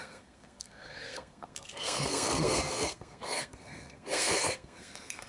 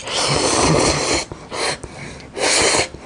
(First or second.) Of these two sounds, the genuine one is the second